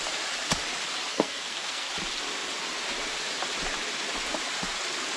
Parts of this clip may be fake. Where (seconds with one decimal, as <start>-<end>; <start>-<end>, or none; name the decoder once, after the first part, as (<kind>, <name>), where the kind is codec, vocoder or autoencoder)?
1.1-1.9 (codec, SNAC)